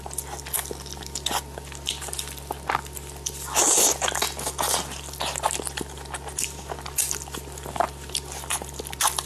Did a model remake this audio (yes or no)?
no